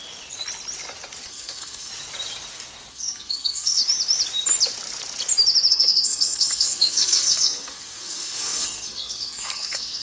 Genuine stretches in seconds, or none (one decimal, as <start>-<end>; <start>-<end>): 0.0-1.3; 1.9-2.9; 3.8-5.7